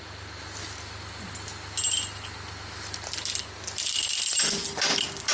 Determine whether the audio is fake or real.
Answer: real